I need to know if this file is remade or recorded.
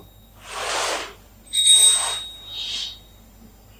recorded